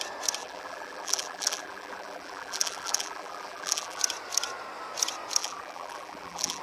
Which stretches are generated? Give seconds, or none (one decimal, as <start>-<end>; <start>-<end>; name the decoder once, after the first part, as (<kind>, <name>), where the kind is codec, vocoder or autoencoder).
0.4-4.0 (vocoder, BigVGAN v2); 5.4-6.6

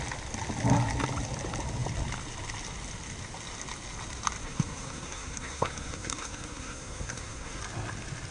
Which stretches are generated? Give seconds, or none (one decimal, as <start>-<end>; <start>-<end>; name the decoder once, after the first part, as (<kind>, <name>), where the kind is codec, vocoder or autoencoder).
4.4-7.6 (codec, SNAC)